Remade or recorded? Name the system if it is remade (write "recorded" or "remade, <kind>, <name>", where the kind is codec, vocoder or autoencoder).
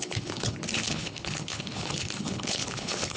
remade, codec, HILCodec